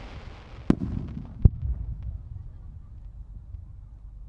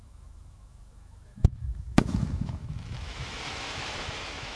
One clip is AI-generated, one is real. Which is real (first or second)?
first